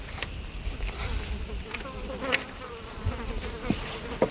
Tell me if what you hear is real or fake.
real